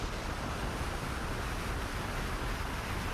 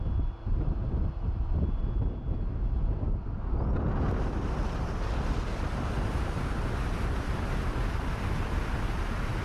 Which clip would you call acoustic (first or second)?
second